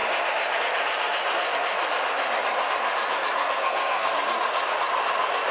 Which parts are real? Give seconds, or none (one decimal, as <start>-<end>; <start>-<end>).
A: 0.0-3.4; 4.1-5.5